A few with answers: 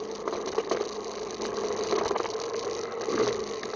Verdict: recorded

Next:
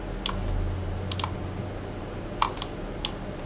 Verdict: recorded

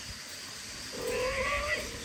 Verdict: recorded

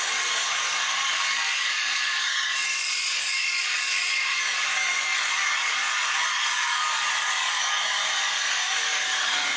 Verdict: remade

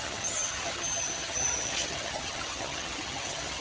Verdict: remade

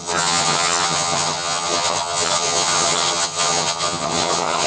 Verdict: remade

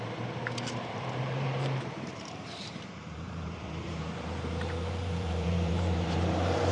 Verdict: remade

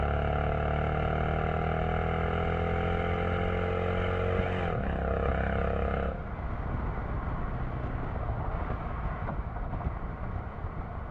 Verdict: recorded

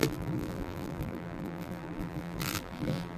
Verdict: remade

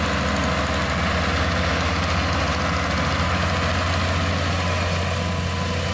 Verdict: recorded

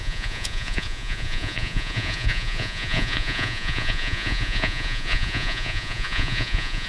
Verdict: remade